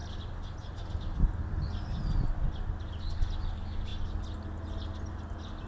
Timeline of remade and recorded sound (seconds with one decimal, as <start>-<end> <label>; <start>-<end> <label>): 0.0-5.7 recorded

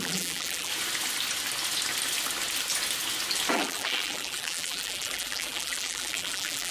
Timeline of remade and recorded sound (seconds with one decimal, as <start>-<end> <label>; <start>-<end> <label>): 0.0-0.7 remade; 0.7-3.5 recorded; 3.5-6.7 remade

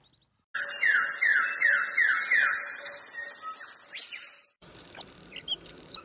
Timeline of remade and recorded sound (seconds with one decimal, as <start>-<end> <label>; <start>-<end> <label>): 0.0-1.3 recorded; 1.3-2.2 remade; 2.2-6.0 recorded

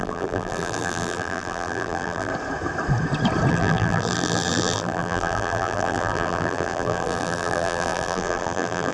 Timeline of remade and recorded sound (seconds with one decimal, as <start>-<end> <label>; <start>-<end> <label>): 0.0-2.3 remade; 2.3-3.5 recorded; 3.5-8.9 remade

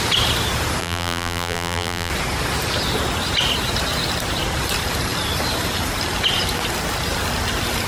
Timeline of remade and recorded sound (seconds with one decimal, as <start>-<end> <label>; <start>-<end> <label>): 0.0-0.8 recorded; 0.8-2.1 remade; 2.1-7.9 recorded